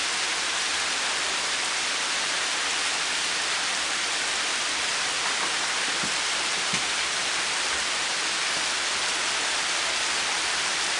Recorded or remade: remade